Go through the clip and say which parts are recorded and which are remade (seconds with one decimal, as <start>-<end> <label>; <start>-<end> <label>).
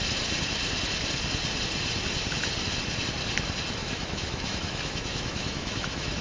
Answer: 0.0-3.8 recorded; 3.8-6.2 remade